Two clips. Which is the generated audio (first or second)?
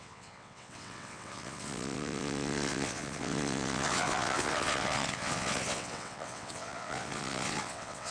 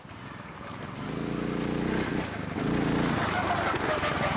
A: first